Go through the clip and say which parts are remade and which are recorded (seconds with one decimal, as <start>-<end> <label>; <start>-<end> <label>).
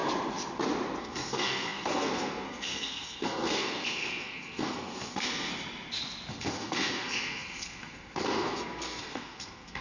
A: 0.0-1.0 recorded; 1.0-5.5 remade; 5.5-6.3 recorded; 6.3-9.8 remade